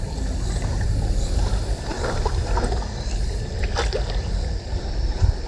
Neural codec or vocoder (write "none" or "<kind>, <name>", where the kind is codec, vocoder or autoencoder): none